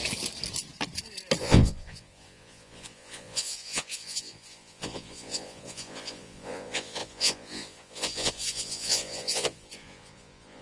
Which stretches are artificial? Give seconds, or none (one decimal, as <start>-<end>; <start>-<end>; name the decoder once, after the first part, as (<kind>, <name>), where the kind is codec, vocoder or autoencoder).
1.4-10.6 (vocoder, Vocos)